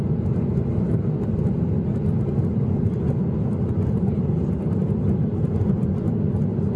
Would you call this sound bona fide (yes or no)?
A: yes